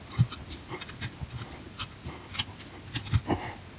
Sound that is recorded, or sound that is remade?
recorded